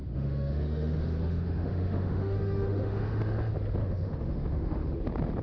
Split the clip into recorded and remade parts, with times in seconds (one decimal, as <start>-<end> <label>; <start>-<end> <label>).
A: 0.0-3.2 remade; 3.2-3.8 recorded; 3.8-4.9 remade; 4.9-5.4 recorded